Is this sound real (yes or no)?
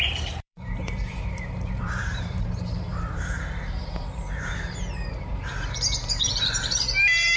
no